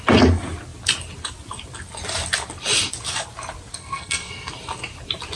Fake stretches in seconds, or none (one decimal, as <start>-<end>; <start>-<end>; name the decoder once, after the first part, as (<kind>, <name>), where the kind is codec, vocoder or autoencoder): 3.8-4.5 (codec, SNAC)